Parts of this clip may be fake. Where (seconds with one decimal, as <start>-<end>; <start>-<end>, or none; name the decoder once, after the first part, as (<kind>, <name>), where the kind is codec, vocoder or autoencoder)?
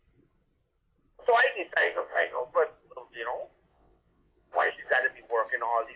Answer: 1.8-2.4 (vocoder, WaveNeXt); 3.7-4.7